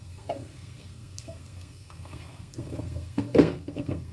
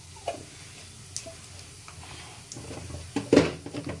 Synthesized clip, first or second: first